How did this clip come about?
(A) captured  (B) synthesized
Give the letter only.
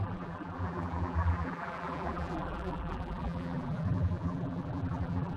B